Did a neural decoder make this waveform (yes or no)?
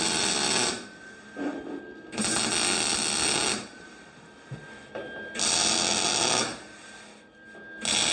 no